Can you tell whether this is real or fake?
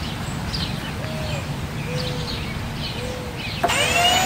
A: real